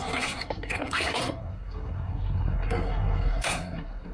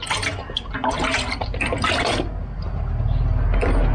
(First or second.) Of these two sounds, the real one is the second